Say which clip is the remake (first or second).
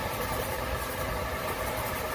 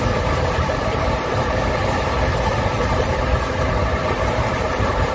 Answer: second